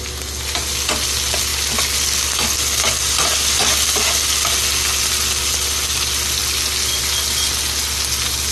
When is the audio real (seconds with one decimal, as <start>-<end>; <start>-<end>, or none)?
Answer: 0.0-8.5